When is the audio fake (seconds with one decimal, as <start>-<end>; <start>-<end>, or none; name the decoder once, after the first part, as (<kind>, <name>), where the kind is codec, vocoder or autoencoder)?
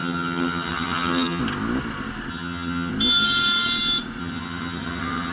0.0-1.4 (vocoder, HiFi-GAN); 2.3-2.9; 4.2-5.3